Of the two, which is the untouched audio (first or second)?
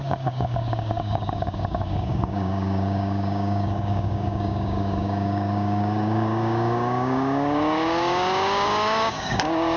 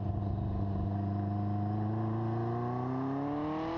second